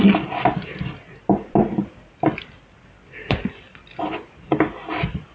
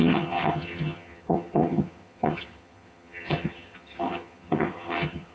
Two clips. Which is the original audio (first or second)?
first